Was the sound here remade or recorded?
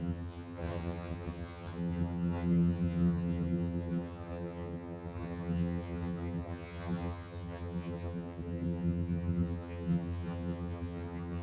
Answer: remade